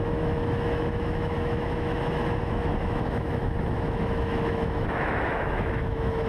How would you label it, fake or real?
fake